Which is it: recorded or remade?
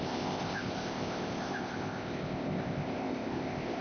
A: remade